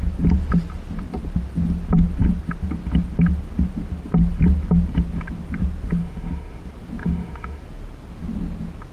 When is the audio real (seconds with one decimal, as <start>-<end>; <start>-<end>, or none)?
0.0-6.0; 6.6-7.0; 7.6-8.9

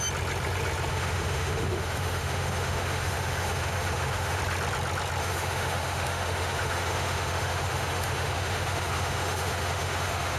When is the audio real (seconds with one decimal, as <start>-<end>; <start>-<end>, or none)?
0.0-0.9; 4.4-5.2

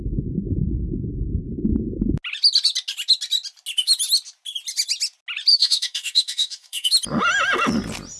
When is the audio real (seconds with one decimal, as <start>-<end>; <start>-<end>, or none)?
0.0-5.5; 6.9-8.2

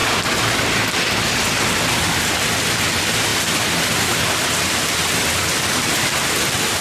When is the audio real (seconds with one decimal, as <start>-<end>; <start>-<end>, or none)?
0.0-6.8